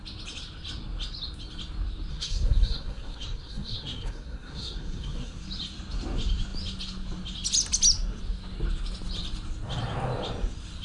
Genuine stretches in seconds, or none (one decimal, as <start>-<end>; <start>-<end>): 0.0-2.1; 5.4-10.8